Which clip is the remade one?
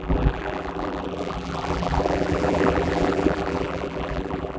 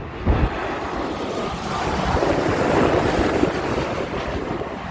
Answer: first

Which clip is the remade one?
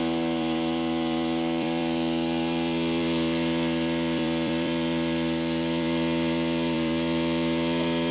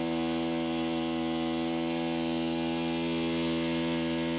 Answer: first